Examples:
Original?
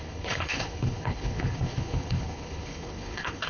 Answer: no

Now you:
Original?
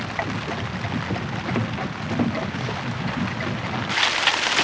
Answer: yes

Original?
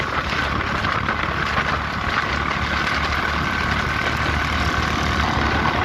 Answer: yes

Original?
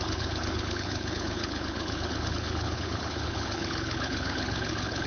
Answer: no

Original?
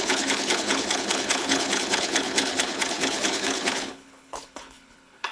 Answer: no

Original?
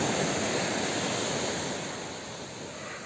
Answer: yes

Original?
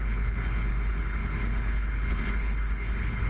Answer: no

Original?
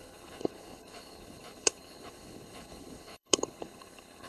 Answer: no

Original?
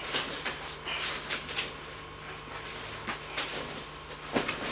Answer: yes